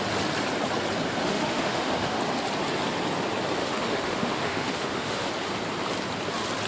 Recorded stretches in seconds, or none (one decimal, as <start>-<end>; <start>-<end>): 0.0-1.2; 2.2-3.6; 5.3-6.7

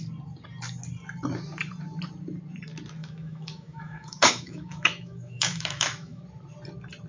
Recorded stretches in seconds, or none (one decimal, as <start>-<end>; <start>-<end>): 0.0-3.0; 6.2-7.1

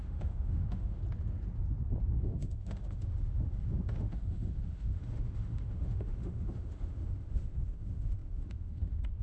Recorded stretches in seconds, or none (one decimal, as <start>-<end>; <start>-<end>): 1.0-2.0

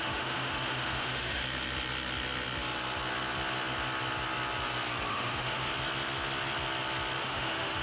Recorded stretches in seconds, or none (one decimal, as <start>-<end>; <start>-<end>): 1.4-5.1; 5.7-7.2

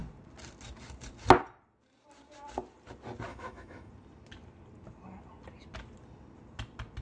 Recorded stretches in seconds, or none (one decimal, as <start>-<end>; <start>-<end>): 0.0-3.3; 3.9-7.0

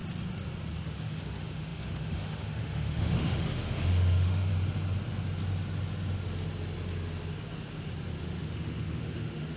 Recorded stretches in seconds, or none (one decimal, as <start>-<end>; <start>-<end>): 0.0-0.8; 4.5-8.2

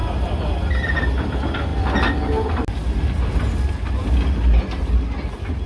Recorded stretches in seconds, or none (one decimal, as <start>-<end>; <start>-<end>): 0.0-5.7

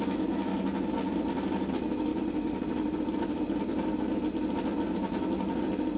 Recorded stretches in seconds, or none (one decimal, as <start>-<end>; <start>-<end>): 0.5-1.7; 2.1-6.0